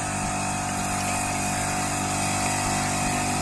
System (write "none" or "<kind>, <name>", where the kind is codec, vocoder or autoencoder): none